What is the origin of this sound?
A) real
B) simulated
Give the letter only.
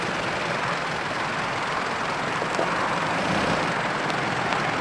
B